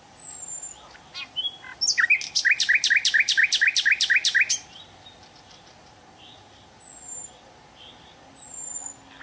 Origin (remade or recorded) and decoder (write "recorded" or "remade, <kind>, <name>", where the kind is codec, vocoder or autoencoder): recorded